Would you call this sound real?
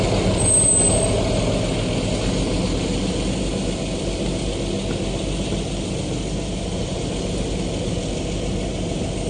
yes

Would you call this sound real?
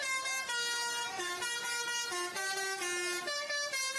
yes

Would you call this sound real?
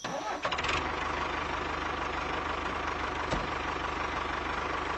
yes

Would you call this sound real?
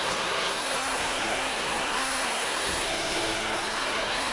no